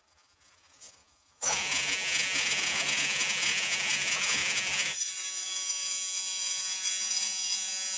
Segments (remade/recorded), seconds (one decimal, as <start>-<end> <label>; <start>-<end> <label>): 0.0-8.0 remade

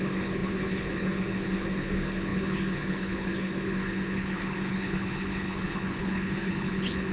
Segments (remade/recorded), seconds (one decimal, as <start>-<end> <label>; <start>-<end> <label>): 0.0-7.1 remade

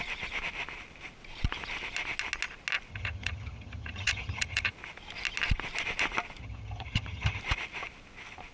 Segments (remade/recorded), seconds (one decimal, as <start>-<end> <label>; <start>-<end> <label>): 0.0-2.9 recorded; 2.9-4.7 remade; 4.7-6.4 recorded; 6.4-7.4 remade; 7.4-8.5 recorded

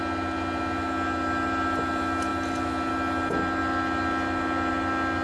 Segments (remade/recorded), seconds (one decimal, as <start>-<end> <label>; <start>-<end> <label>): 0.0-5.2 recorded

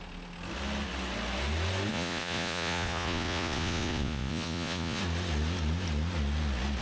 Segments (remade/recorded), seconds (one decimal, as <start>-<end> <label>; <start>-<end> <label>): 0.0-1.9 recorded; 1.9-5.0 remade; 5.0-6.8 recorded

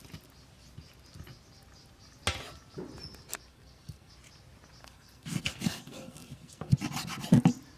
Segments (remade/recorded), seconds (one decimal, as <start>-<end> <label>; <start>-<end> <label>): 0.0-3.5 recorded; 3.5-4.1 remade; 4.1-4.8 recorded; 4.8-6.7 remade; 6.7-7.8 recorded

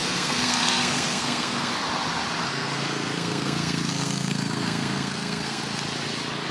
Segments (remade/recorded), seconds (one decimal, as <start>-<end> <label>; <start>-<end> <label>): 0.0-1.7 remade; 1.7-2.5 recorded; 2.5-5.6 remade; 5.6-6.5 recorded